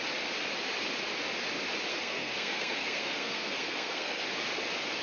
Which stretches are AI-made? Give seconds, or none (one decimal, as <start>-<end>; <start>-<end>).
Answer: 1.9-4.2